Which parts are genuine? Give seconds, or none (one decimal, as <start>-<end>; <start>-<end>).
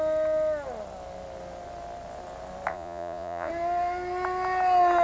0.0-2.7; 3.5-5.0